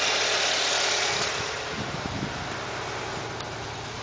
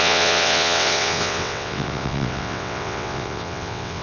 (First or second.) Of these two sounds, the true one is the first